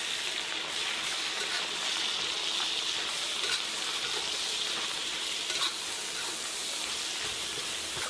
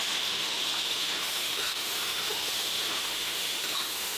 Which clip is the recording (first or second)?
first